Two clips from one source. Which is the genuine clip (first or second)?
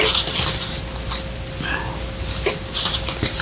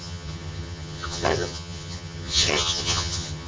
first